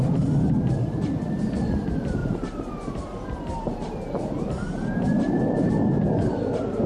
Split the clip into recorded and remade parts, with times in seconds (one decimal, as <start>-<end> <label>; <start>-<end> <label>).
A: 0.0-2.2 recorded; 2.2-5.7 remade; 5.7-6.9 recorded